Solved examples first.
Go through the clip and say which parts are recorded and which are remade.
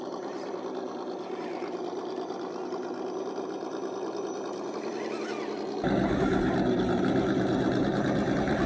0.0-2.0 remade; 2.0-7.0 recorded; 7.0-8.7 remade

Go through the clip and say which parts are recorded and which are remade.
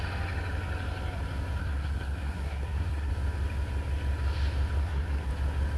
0.0-1.6 recorded; 1.6-3.1 remade; 3.1-4.8 recorded; 4.8-5.3 remade; 5.3-5.8 recorded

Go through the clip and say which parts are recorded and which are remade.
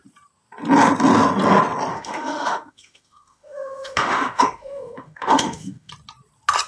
0.0-1.9 recorded; 1.9-5.9 remade; 5.9-6.7 recorded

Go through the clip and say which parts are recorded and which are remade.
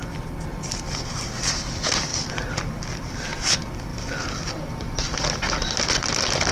0.0-3.9 recorded; 3.9-6.5 remade